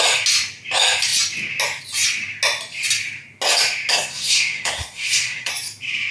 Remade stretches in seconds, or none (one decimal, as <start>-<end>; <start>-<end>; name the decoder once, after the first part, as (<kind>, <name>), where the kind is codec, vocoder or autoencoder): 3.9-5.5 (codec, SNAC)